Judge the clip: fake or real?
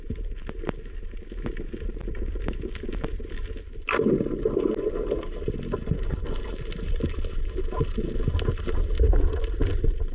real